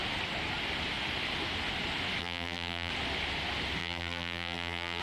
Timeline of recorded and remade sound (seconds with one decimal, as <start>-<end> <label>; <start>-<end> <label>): 0.0-2.2 recorded; 2.2-2.9 remade; 2.9-3.8 recorded; 3.8-5.0 remade